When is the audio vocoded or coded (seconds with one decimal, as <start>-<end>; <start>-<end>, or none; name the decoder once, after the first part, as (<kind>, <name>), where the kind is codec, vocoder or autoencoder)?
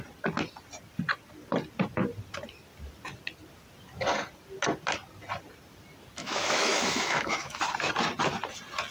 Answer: 6.2-7.6 (autoencoder, DAC-VAE)